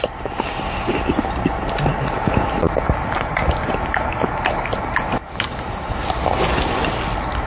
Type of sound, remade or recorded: recorded